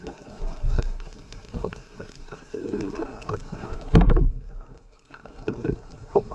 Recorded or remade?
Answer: remade